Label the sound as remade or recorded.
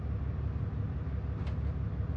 recorded